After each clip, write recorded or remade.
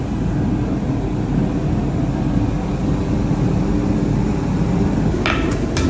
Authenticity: recorded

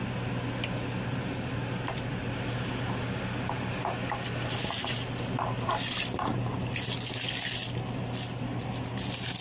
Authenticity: recorded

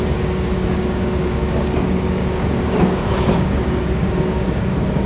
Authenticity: remade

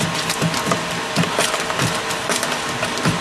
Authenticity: recorded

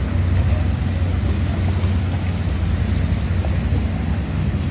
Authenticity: recorded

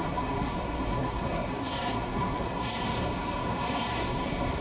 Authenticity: remade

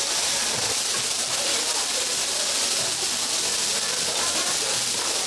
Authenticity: recorded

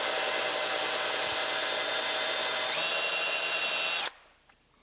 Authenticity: recorded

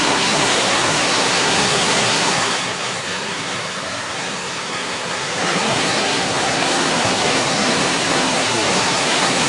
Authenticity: remade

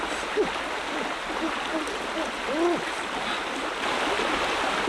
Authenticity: recorded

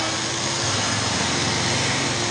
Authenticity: recorded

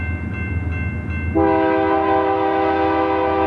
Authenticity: recorded